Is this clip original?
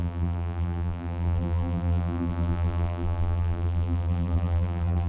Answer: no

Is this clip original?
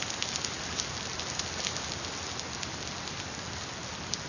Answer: yes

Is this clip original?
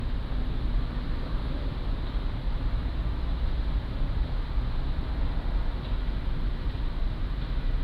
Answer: yes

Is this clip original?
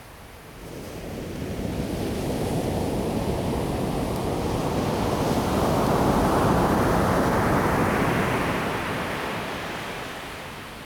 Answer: yes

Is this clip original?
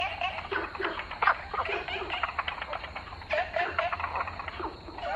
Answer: no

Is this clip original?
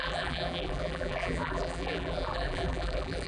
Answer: no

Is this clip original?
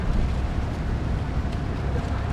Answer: no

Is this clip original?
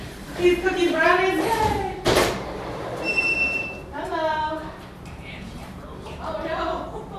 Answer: no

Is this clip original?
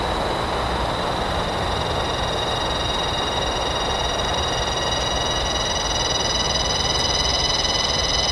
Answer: yes